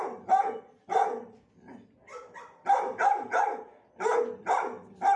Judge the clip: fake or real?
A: real